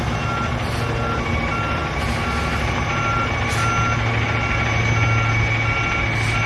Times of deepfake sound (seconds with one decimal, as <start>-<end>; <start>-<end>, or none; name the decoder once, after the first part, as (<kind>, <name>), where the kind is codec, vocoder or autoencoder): none